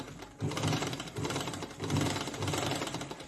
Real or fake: real